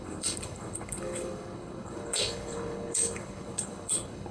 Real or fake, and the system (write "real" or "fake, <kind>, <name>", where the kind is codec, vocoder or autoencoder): fake, codec, HILCodec